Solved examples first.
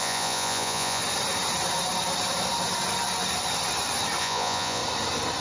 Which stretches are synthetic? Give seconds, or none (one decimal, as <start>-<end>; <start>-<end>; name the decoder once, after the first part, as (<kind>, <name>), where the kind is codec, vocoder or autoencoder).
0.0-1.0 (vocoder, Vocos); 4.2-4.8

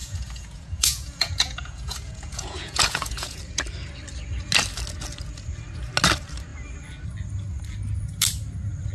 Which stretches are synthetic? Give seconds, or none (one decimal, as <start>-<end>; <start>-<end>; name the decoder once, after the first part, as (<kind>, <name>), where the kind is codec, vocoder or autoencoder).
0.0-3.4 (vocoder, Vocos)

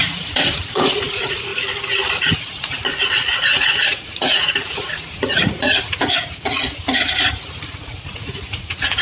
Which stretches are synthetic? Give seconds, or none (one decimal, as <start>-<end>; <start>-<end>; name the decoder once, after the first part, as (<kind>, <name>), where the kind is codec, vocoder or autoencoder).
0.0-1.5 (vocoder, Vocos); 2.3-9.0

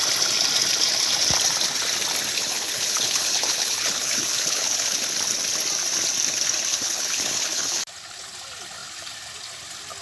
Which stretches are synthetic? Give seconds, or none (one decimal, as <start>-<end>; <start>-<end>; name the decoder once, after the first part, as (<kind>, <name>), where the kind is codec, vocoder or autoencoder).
2.4-5.0 (codec, HILCodec); 6.7-7.8

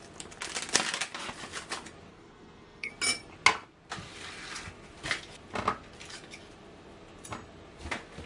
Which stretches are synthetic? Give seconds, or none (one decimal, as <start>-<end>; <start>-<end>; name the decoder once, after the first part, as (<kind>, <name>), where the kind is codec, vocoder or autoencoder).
2.1-2.9 (codec, SNAC)